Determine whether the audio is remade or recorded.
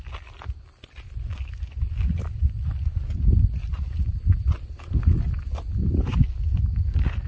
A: recorded